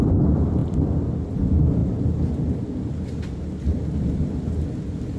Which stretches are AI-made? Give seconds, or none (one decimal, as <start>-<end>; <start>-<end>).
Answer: none